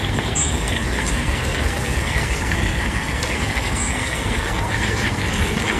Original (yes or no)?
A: no